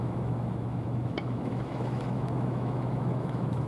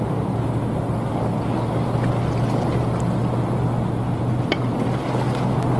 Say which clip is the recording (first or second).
second